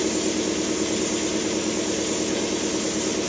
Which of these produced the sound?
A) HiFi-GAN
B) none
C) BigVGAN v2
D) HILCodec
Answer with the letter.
B